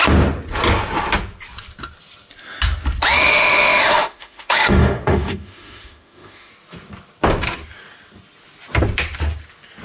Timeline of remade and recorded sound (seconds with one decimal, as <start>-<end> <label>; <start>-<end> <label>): 0.0-3.2 recorded; 3.2-6.5 remade; 6.5-9.8 recorded